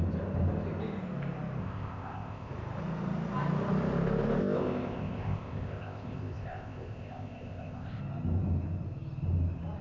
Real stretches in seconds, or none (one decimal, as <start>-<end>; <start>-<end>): 0.0-1.6; 2.5-4.4; 8.0-9.8